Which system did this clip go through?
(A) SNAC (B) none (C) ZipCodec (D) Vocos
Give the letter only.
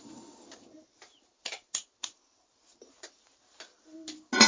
B